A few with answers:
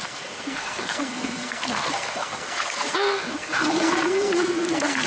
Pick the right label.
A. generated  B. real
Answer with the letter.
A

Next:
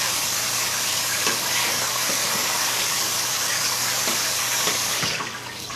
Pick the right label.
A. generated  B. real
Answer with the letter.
A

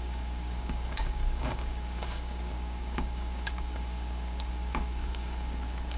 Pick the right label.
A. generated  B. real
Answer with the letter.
A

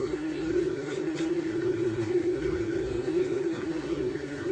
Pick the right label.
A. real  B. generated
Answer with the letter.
B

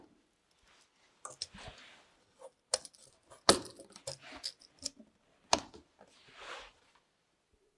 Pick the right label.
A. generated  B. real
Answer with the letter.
B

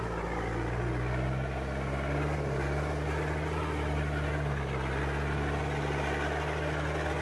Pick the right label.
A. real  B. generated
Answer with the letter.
A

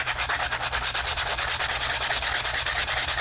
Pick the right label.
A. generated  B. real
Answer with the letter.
B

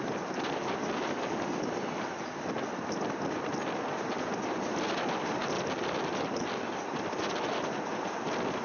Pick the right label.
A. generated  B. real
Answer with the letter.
B